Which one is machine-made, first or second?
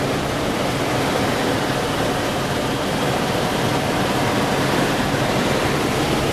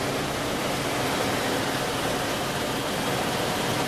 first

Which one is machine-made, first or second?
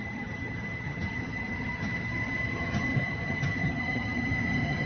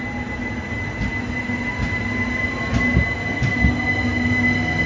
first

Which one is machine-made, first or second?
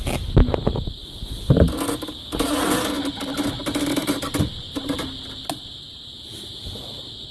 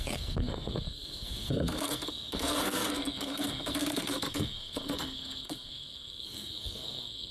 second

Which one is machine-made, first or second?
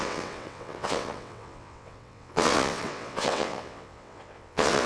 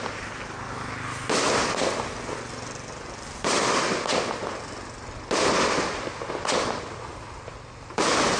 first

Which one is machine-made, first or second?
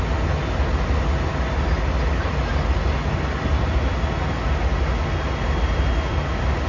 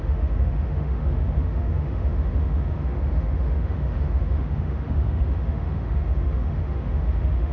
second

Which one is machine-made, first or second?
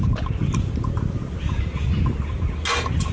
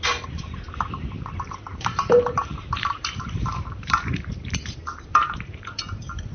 second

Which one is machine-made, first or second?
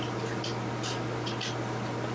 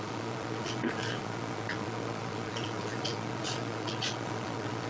second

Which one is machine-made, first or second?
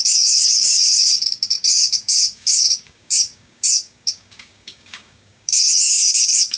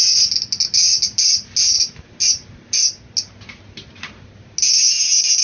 first